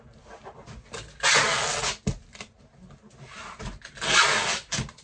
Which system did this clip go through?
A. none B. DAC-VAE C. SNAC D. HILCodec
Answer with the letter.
A